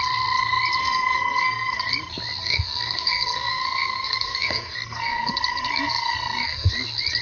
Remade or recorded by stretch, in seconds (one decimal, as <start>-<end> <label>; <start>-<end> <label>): 0.0-0.8 recorded; 0.8-1.9 remade; 1.9-2.4 recorded; 2.4-6.7 remade; 6.7-7.2 recorded